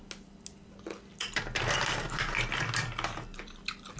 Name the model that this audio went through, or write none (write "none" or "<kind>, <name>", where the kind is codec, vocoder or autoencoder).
none